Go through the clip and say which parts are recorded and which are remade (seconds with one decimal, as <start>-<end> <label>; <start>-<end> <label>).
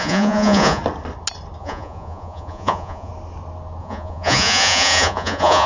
0.0-0.8 remade; 0.8-1.6 recorded; 1.6-3.1 remade; 3.1-3.8 recorded; 3.8-5.7 remade